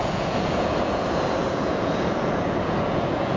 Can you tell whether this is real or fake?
fake